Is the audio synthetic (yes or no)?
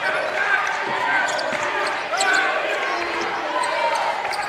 no